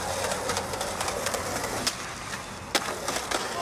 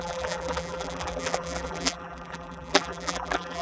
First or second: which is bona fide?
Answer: first